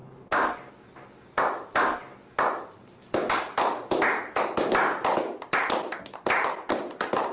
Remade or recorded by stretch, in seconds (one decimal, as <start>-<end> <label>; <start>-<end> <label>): 0.0-7.3 recorded